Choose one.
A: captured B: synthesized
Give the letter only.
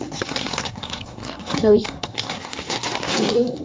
B